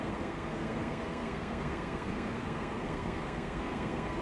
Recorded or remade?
remade